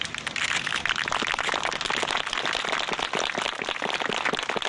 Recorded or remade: recorded